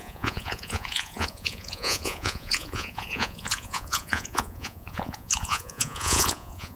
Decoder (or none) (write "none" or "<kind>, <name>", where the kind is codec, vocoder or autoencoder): vocoder, Vocos